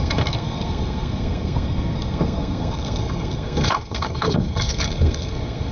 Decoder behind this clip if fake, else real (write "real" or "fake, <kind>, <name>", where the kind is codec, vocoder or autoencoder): fake, codec, SNAC